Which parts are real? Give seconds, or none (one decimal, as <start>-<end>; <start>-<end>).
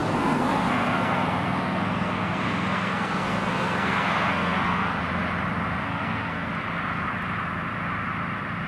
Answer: 5.0-5.8; 6.5-8.7